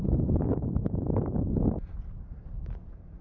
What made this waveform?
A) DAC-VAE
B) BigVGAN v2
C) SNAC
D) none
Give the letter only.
D